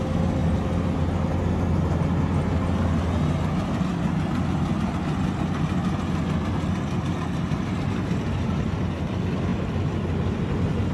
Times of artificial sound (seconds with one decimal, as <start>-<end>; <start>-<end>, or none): none